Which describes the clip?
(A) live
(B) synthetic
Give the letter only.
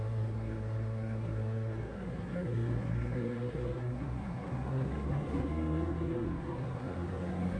B